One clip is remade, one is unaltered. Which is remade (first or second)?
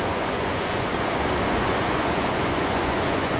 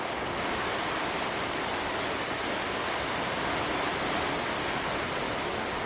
first